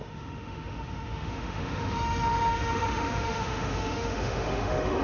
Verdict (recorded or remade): remade